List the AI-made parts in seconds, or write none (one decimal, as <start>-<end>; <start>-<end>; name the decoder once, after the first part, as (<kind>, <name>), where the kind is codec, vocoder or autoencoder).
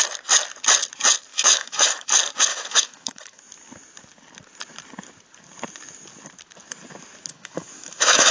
1.3-2.1 (autoencoder, DAC-VAE); 2.5-3.4; 7.3-8.3